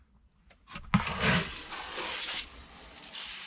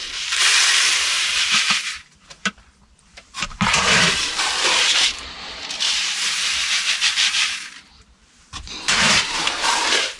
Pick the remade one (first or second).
second